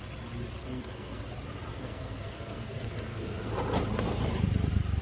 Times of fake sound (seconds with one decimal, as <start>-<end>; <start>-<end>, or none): 0.6-1.2; 1.7-3.5